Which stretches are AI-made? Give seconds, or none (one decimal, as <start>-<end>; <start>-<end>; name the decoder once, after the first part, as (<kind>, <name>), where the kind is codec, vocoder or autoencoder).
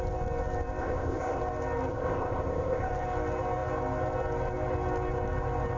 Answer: 0.8-1.4 (codec, ZipCodec); 1.9-2.9